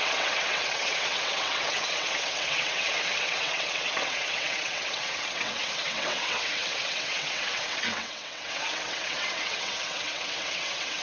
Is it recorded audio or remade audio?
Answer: remade